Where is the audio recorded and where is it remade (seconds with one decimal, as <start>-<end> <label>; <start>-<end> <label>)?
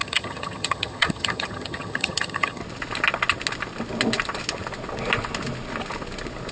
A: 0.0-2.6 remade; 2.6-6.5 recorded